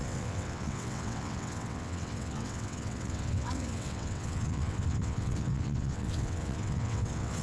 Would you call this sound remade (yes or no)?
yes